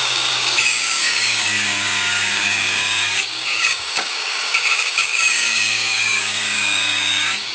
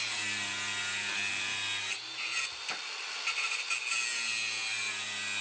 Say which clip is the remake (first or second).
first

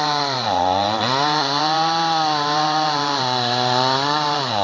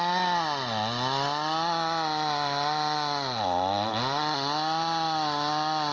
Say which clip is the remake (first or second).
first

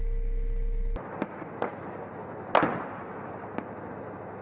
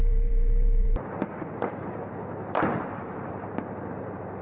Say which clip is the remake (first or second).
second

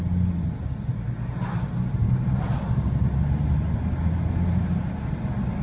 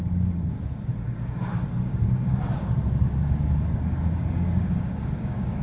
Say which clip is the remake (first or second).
second